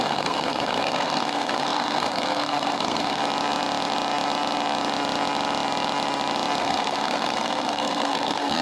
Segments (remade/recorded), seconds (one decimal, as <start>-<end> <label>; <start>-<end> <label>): 0.0-3.2 remade; 3.2-6.6 recorded; 6.6-8.6 remade